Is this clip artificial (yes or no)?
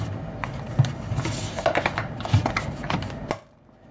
no